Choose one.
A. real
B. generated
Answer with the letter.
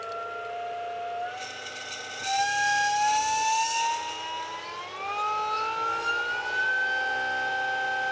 A